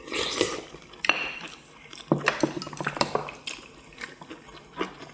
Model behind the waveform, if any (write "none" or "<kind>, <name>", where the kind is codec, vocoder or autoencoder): none